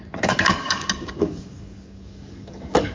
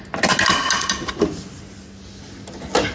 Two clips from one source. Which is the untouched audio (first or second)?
second